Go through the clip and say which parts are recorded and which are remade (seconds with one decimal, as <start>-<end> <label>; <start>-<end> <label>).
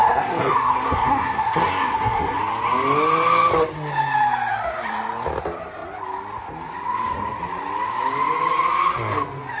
0.0-2.4 remade; 2.4-9.6 recorded